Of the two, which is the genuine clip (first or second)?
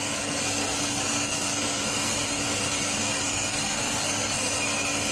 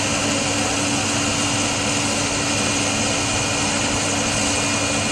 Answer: second